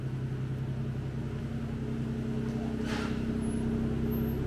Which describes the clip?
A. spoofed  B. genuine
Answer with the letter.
B